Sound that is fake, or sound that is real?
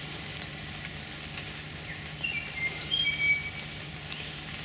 real